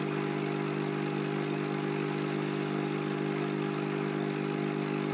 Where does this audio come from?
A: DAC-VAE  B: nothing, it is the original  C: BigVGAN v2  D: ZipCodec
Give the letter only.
B